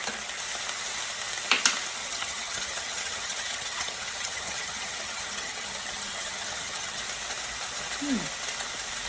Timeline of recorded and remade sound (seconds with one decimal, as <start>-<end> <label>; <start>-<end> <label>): 0.0-2.0 recorded; 2.0-7.0 remade; 7.0-9.1 recorded